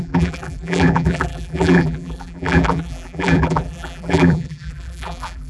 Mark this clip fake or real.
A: fake